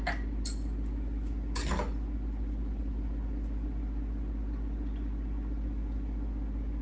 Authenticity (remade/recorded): recorded